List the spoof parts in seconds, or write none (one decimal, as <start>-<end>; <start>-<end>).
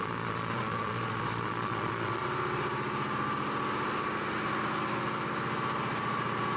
0.0-2.2